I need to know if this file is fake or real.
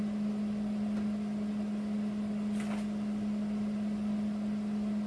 real